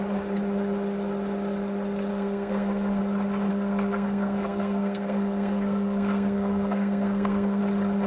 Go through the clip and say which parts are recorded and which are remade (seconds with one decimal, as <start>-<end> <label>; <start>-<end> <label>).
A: 0.0-2.1 recorded; 2.1-3.0 remade; 3.0-3.5 recorded; 3.5-7.6 remade; 7.6-8.1 recorded